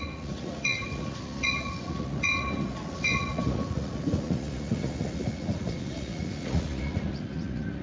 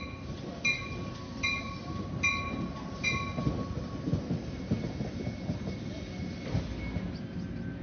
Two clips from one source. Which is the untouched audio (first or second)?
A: second